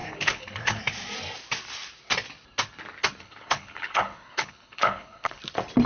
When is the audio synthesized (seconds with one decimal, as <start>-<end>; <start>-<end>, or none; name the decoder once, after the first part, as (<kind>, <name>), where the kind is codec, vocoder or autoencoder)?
0.0-0.8 (codec, HILCodec); 3.2-5.4